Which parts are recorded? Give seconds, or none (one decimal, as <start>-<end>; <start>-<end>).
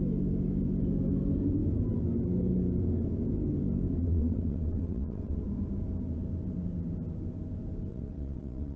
0.0-4.0; 5.4-7.9